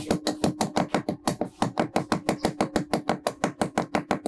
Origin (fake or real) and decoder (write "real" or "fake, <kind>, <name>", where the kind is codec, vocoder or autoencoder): real